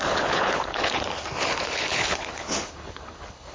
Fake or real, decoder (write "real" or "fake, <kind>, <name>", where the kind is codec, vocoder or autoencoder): fake, codec, HILCodec